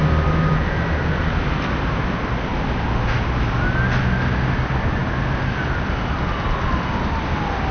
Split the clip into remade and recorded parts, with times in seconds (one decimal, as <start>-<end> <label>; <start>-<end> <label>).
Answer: 0.0-7.7 recorded